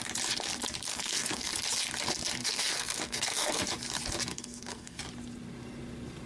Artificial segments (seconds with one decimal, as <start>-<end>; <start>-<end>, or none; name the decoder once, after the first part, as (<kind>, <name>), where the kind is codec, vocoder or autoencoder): 0.9-1.5 (codec, SNAC); 2.4-3.6; 4.3-5.0